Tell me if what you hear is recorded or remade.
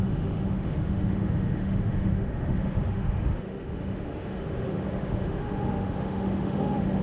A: remade